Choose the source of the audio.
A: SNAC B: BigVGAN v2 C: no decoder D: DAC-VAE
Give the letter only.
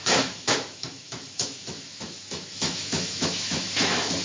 D